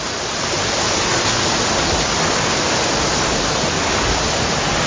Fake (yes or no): no